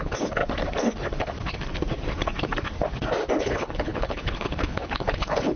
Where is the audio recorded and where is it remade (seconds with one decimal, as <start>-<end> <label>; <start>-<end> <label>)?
0.0-0.4 remade; 0.4-3.4 recorded; 3.4-5.6 remade